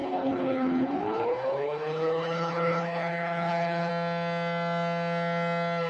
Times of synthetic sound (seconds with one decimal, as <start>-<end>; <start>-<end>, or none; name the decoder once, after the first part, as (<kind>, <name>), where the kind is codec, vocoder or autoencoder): 0.0-3.9 (codec, HILCodec)